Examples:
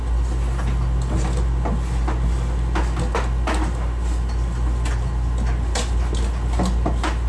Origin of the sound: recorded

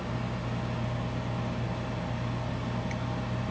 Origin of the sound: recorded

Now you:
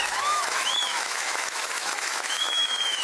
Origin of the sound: remade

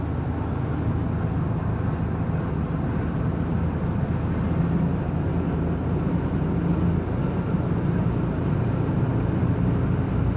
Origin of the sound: recorded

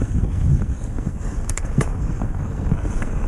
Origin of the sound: remade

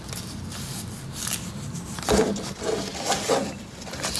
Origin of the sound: recorded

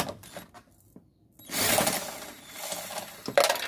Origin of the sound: recorded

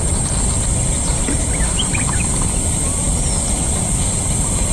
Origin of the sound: remade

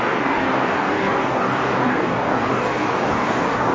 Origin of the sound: remade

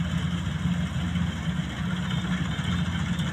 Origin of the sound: recorded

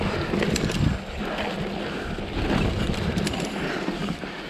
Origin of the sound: recorded